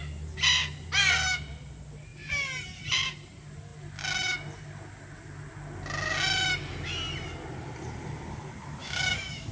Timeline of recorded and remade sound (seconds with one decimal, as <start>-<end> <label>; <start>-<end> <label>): 0.0-8.8 recorded; 8.8-9.5 remade